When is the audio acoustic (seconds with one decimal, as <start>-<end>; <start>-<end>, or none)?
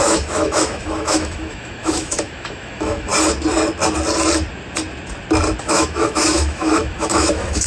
3.1-5.6